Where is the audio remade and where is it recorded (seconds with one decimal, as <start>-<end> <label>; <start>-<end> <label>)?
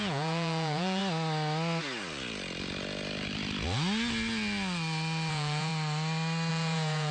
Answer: 0.0-1.0 remade; 1.0-5.3 recorded; 5.3-5.7 remade; 5.7-6.5 recorded; 6.5-7.1 remade